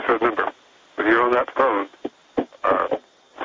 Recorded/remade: recorded